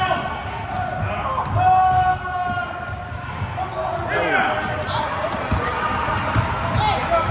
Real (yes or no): yes